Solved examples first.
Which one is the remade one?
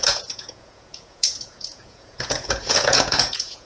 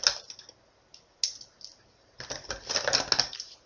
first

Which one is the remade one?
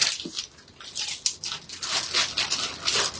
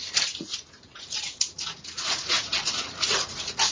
second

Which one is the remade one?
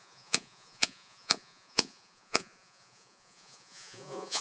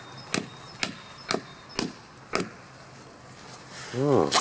first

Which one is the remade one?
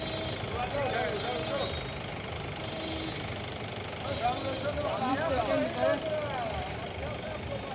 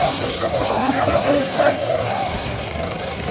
second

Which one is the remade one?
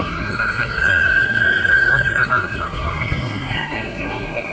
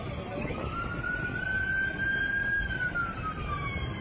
first